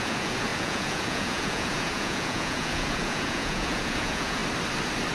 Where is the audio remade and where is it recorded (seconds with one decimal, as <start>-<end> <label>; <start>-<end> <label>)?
0.0-4.4 remade; 4.4-5.1 recorded